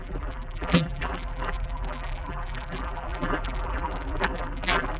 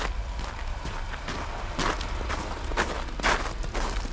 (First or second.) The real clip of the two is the second